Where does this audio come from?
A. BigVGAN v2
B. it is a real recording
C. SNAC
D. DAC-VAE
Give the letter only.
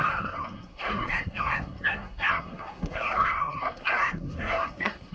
C